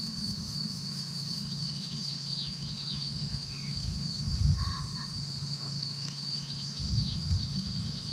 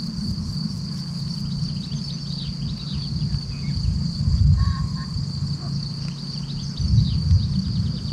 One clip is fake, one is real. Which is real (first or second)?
second